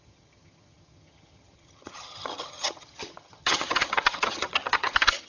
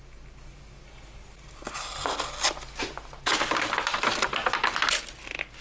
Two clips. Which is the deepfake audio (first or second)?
first